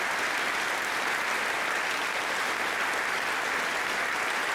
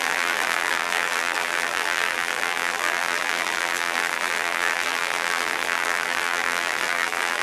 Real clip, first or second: first